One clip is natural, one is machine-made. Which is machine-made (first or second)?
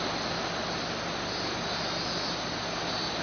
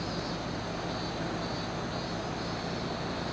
first